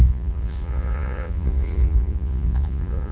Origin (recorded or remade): remade